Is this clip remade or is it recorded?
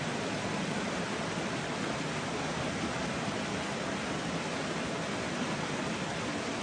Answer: recorded